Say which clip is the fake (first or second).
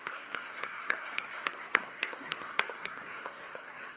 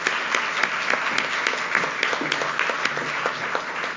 first